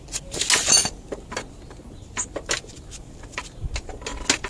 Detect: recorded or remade recorded